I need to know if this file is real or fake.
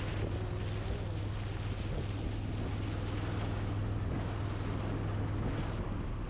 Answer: real